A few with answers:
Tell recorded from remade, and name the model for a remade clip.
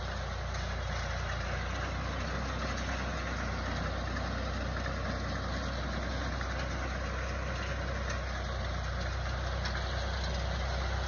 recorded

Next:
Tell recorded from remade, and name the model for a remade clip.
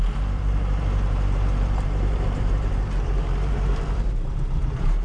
remade, vocoder, BigVGAN v2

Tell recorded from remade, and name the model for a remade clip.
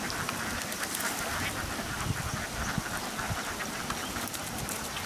recorded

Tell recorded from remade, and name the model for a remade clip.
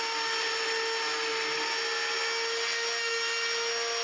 recorded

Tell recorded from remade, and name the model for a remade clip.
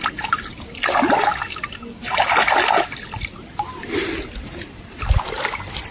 recorded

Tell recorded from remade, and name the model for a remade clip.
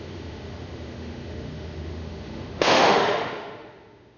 remade, autoencoder, DAC-VAE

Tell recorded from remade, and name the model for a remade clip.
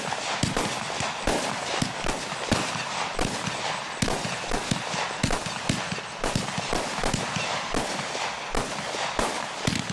recorded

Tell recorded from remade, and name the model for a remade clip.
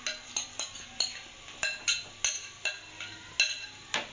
recorded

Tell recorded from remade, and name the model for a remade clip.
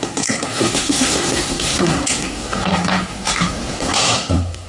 remade, codec, SNAC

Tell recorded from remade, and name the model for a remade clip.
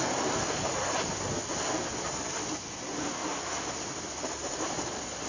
recorded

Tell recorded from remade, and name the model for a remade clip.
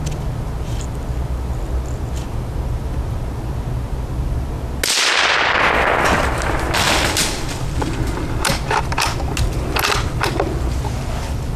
recorded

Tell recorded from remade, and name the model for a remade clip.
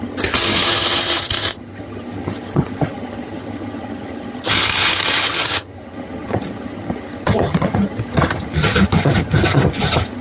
remade, vocoder, HiFi-GAN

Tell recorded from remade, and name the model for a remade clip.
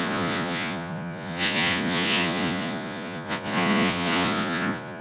remade, vocoder, Vocos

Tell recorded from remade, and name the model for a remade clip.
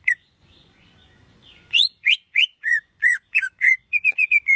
remade, vocoder, Vocos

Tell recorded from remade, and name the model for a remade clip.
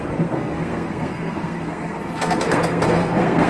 remade, codec, SNAC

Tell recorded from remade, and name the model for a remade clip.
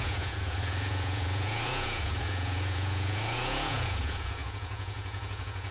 remade, vocoder, Vocos